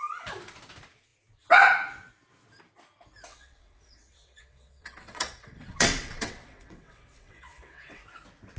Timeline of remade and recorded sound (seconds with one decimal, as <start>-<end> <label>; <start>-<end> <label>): 0.0-3.3 recorded; 3.3-8.0 remade; 8.0-8.6 recorded